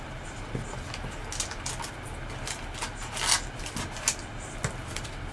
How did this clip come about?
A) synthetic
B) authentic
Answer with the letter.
B